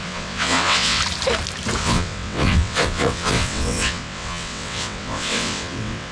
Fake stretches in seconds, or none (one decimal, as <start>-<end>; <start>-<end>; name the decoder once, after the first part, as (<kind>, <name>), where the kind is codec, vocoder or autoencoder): 0.0-1.0 (vocoder, WaveNeXt); 1.8-6.1